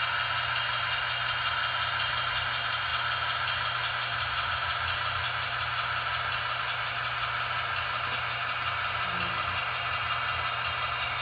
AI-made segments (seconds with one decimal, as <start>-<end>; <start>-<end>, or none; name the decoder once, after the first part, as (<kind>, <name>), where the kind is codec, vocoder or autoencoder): none